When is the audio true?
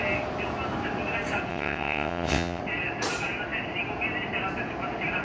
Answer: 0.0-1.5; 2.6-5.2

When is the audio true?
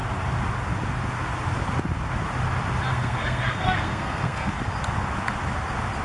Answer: 0.0-2.9; 4.5-6.0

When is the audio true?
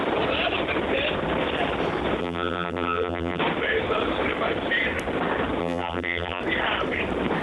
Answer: 0.0-2.2; 3.4-5.6; 6.4-7.4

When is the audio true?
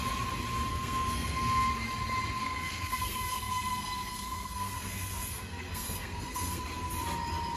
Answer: 0.0-0.7; 1.7-2.4; 6.6-7.6